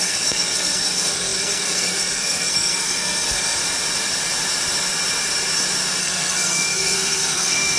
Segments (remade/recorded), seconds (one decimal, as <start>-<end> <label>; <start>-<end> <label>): 0.0-3.6 remade; 3.6-6.0 recorded; 6.0-7.8 remade